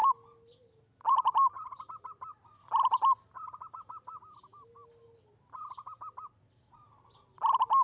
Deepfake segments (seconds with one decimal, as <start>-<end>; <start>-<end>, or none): none